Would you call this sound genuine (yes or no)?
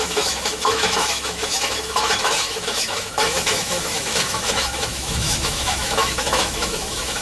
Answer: no